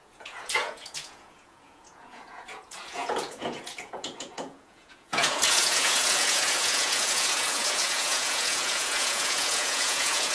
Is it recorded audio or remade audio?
remade